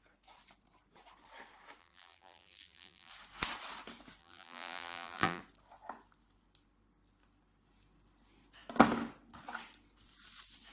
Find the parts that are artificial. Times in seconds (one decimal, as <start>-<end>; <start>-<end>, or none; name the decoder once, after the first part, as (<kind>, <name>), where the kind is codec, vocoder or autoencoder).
1.8-3.1 (vocoder, BigVGAN v2); 4.2-5.4